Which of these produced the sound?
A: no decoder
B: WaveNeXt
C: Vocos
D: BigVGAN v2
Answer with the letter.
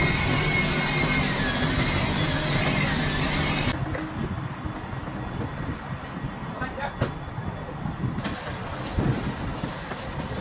A